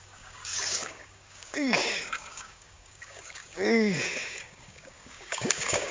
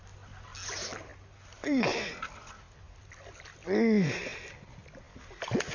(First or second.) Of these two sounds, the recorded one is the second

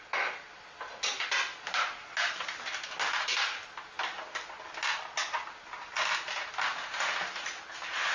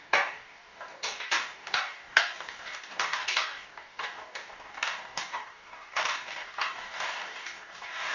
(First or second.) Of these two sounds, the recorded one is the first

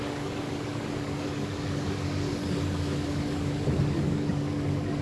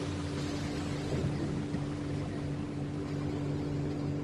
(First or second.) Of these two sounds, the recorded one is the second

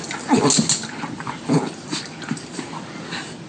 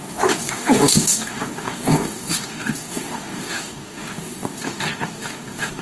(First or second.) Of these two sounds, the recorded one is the first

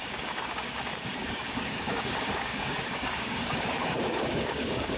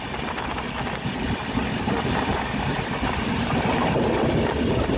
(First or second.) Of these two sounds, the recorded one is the second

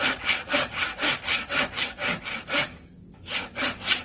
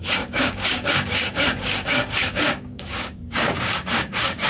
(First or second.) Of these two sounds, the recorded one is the first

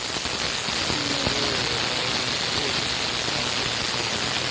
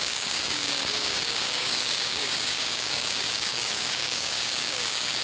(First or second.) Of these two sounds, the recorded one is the first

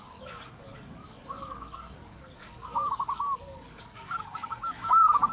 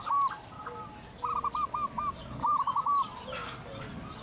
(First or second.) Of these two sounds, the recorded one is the second